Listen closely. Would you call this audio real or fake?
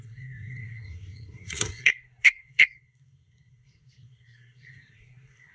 fake